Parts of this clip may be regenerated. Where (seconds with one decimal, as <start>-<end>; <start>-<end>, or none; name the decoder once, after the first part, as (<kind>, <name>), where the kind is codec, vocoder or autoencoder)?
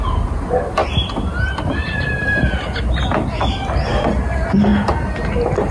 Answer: none